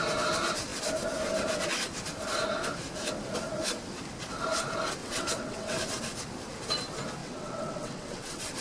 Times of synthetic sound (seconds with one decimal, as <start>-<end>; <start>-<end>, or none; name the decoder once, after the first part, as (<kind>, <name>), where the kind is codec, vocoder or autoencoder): 5.0-5.8 (vocoder, WaveNeXt); 7.2-8.6